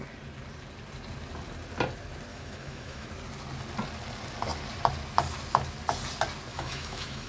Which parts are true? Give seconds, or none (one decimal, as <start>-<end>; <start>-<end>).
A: 0.0-2.3; 3.1-6.5